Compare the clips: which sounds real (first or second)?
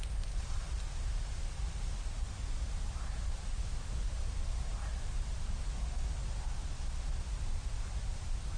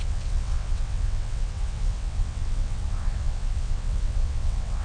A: first